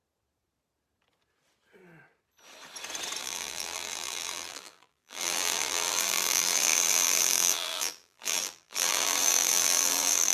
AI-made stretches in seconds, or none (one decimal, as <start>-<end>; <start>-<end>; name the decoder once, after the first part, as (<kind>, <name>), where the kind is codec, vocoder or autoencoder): 3.2-10.3 (vocoder, BigVGAN v2)